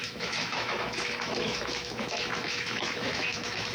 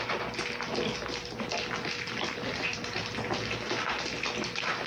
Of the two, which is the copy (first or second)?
first